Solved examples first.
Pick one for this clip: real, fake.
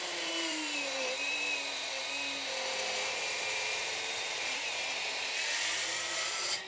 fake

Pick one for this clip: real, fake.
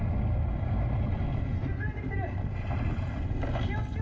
real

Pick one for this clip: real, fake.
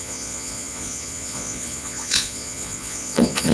fake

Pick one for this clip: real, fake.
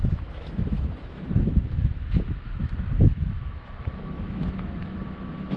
fake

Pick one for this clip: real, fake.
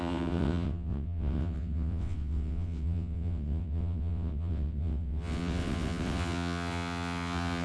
fake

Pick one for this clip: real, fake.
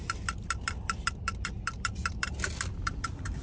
fake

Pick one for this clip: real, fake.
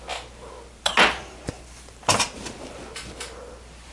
real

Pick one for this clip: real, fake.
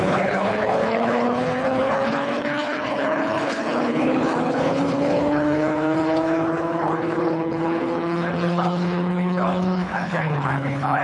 fake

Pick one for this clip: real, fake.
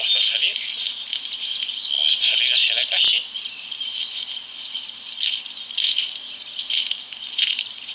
real